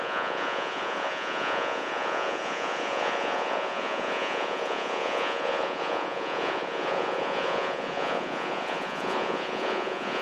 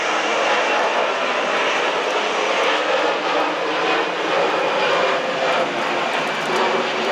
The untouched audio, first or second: second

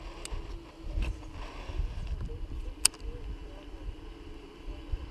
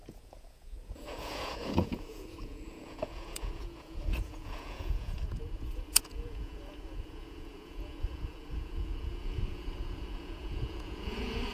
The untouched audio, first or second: first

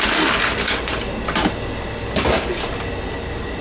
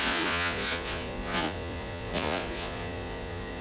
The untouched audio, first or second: first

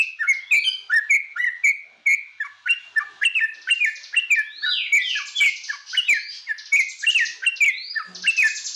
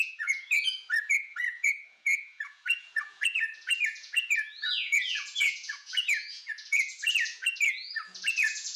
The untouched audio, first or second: first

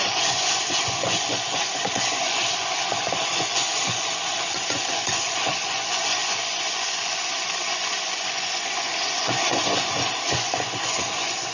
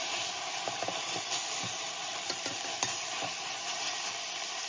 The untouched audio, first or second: second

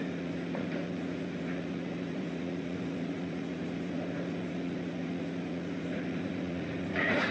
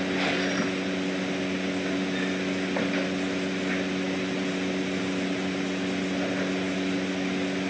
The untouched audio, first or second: second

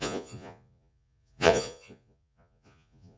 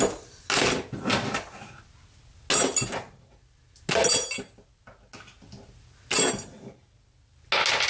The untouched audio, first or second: second